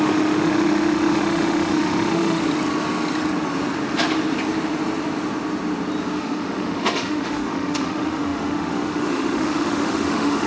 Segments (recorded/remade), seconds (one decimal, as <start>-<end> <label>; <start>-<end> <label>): 0.0-2.4 remade; 2.4-6.2 recorded; 6.2-10.5 remade